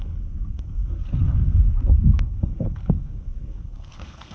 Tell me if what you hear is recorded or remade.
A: remade